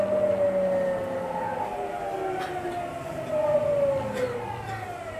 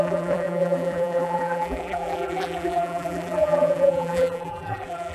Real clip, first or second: first